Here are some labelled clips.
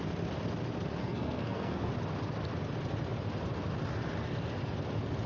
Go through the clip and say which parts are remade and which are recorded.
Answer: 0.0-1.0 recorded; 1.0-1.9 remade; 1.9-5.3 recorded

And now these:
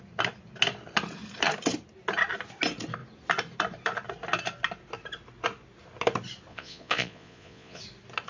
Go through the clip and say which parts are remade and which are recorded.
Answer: 0.0-6.5 recorded; 6.5-7.8 remade; 7.8-8.3 recorded

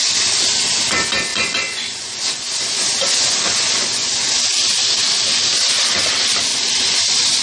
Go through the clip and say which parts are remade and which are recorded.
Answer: 0.0-1.3 recorded; 1.3-4.4 remade; 4.4-6.5 recorded; 6.5-7.4 remade

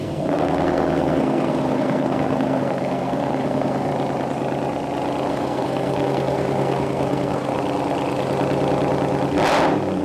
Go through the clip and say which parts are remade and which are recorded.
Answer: 0.0-3.9 remade; 3.9-5.3 recorded; 5.3-7.5 remade; 7.5-10.0 recorded

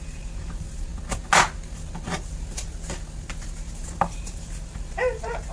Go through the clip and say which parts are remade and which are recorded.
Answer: 0.0-0.9 remade; 0.9-4.0 recorded; 4.0-5.5 remade